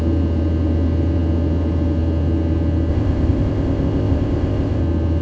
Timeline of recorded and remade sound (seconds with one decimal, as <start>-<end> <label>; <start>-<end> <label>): 0.0-2.9 recorded; 2.9-4.8 remade; 4.8-5.2 recorded